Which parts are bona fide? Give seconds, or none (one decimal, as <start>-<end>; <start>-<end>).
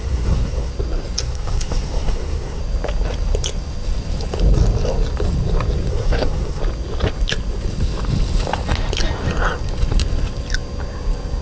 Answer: 0.7-1.2; 2.6-5.9; 6.6-11.4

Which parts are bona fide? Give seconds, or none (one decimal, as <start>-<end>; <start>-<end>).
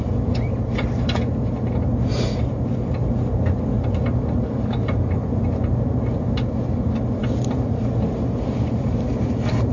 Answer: 0.0-9.7